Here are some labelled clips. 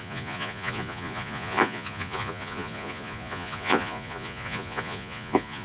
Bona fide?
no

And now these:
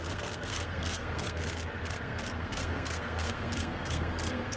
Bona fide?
no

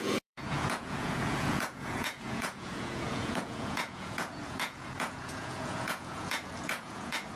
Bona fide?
no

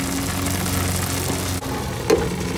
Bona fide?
yes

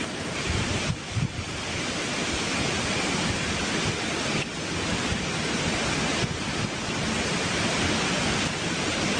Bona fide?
yes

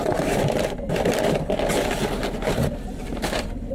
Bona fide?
yes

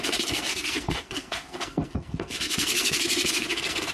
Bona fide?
no